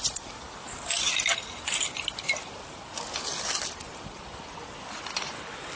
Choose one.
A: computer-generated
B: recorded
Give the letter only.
B